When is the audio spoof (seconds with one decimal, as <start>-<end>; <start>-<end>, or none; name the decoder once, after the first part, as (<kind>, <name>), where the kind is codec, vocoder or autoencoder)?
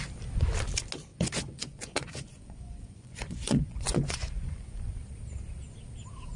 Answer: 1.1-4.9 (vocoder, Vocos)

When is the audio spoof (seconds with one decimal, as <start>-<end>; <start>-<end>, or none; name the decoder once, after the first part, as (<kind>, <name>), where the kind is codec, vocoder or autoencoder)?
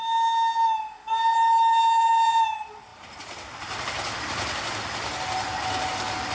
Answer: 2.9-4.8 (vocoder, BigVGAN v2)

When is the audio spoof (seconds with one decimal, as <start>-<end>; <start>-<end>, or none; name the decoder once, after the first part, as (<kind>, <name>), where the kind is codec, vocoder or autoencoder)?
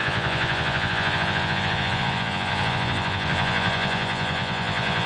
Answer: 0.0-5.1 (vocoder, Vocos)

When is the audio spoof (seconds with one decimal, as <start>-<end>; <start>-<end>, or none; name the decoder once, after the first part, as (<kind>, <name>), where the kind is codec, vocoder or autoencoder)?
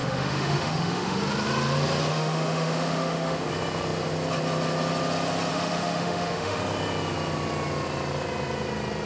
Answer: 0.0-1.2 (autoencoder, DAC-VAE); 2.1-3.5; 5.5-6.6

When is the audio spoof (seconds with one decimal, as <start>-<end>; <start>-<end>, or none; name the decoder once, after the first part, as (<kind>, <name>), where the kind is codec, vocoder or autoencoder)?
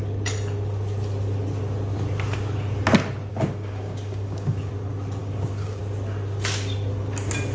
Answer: 3.3-4.7 (codec, DAC); 5.2-5.8